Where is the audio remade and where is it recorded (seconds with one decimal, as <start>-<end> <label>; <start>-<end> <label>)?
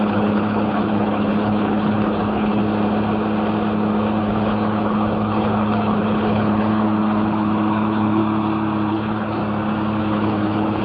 0.0-2.6 remade; 2.6-4.2 recorded; 4.2-8.2 remade; 8.2-8.9 recorded; 8.9-9.4 remade; 9.4-10.0 recorded; 10.0-10.8 remade